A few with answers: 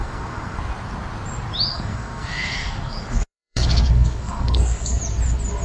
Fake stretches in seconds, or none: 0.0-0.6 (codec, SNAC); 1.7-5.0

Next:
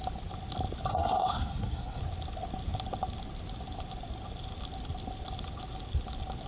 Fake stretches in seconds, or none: 0.9-2.0 (codec, SNAC)

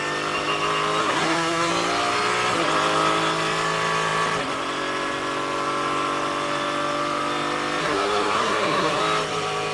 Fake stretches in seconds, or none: 1.0-1.7 (codec, SNAC); 7.8-9.0

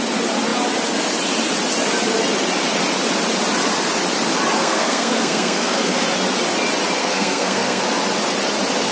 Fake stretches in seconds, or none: 4.6-6.0 (codec, SNAC); 7.0-7.8

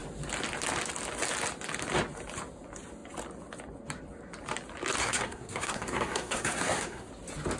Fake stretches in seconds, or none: 5.0-7.1 (codec, SNAC)

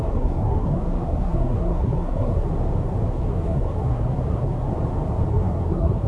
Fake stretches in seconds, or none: 0.0-2.5 (codec, SNAC); 3.1-4.7; 5.3-6.1